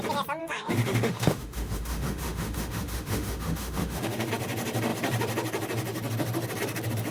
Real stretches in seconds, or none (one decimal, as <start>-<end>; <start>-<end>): 0.0-0.4; 4.3-7.1